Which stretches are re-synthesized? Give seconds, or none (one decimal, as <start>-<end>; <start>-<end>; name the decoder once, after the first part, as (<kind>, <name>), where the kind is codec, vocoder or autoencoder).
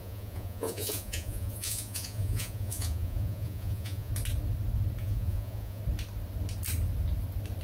0.0-4.1 (vocoder, Vocos); 5.0-5.8